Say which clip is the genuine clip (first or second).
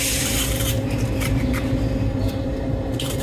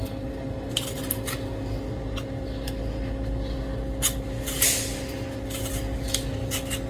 second